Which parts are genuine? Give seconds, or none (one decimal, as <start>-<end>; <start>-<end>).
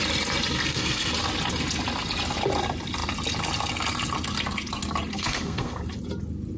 0.0-0.6; 1.1-5.1; 5.8-6.6